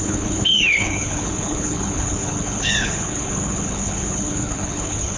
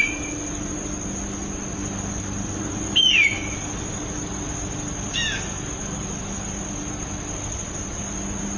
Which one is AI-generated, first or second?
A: first